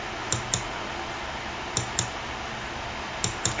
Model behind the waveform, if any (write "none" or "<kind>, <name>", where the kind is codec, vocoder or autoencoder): none